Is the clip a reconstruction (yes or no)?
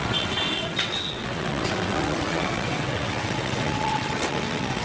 yes